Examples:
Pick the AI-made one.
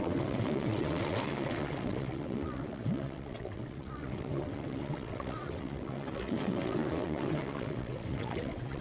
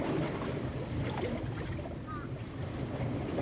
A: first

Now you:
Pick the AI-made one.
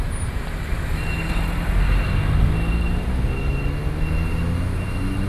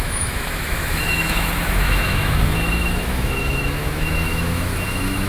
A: second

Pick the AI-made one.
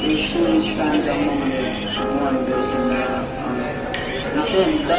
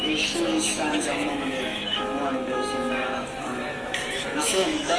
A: second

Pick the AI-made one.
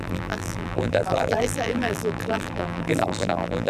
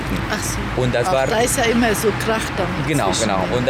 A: first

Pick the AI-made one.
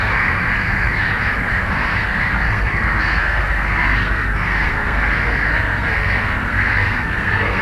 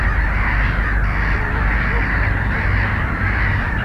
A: first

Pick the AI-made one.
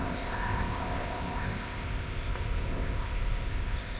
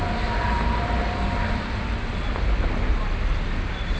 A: first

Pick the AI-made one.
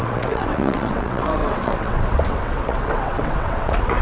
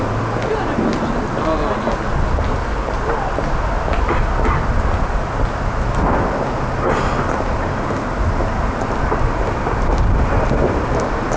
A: first